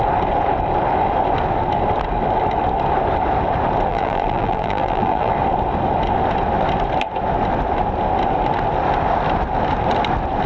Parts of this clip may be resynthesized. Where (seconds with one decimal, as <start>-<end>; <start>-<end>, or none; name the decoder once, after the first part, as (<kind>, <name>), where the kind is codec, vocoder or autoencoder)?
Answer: 3.9-5.3 (vocoder, BigVGAN v2)

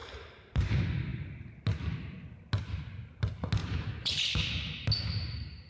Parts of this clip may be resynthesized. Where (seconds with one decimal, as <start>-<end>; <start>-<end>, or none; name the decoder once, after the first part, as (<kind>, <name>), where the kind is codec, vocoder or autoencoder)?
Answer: 3.6-4.2 (vocoder, BigVGAN v2)